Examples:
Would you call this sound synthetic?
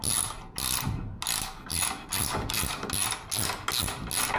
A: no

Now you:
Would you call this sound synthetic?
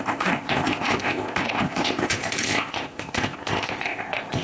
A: yes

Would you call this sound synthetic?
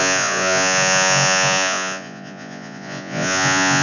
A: yes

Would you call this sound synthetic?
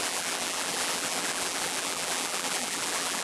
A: yes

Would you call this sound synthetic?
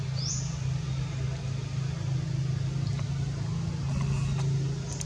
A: no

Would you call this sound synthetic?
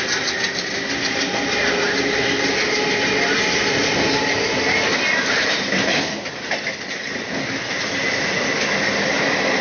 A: no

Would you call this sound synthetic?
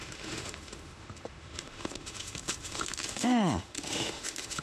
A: yes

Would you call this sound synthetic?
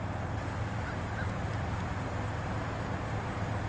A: no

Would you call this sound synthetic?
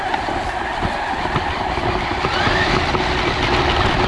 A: no